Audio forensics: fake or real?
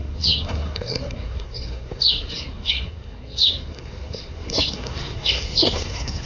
fake